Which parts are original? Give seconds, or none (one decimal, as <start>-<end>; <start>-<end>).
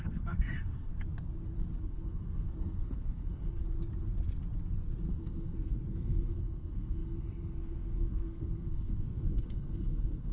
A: 0.9-1.8; 3.6-5.1